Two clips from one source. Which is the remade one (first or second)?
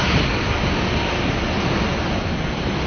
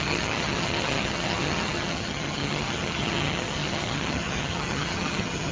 second